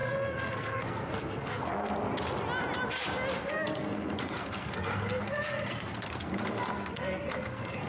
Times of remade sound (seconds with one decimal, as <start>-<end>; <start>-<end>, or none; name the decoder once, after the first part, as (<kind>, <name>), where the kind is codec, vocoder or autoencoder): 0.0-1.9 (codec, SNAC); 3.4-7.9

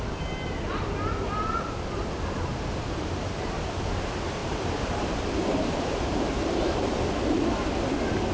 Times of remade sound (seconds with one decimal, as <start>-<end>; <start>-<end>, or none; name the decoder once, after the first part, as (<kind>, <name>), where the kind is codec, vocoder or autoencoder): 2.5-3.6 (vocoder, BigVGAN v2); 4.4-5.1; 5.5-7.0

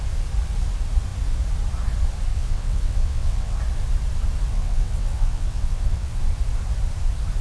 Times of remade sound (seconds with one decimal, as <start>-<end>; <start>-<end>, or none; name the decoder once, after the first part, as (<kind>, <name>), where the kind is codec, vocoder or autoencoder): 2.3-3.6 (vocoder, WaveNeXt); 4.5-6.2

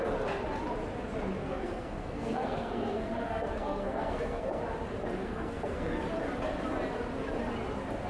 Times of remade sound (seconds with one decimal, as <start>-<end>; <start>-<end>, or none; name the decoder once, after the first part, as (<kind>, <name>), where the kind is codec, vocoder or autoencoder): 1.4-4.6 (codec, SNAC); 5.2-6.0

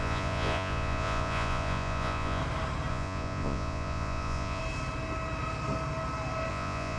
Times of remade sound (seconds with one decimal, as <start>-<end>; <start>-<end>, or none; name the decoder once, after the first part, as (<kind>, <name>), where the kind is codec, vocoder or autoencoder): 0.0-2.4 (vocoder, Vocos); 2.9-4.6; 6.5-7.0

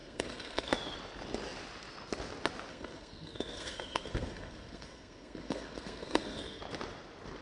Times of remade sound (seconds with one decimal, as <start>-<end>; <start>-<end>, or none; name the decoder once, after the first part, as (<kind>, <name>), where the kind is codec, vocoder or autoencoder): 0.0-0.7 (codec, SNAC); 2.7-6.6